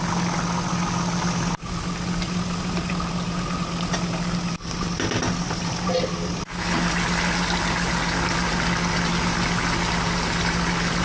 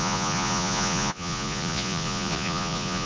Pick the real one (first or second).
first